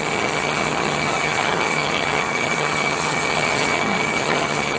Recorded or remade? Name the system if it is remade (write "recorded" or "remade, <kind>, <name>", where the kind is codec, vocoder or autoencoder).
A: remade, vocoder, HiFi-GAN